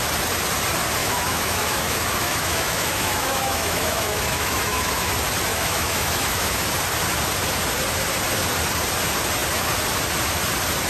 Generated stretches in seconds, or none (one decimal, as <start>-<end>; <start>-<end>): 1.0-5.1; 5.5-6.6